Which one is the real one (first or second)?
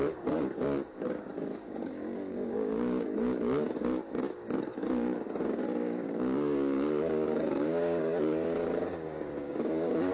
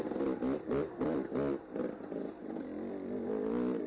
second